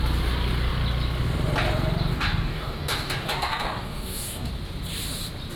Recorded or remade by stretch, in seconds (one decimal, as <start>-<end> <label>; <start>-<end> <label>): 0.0-2.1 recorded; 2.1-4.5 remade; 4.5-5.6 recorded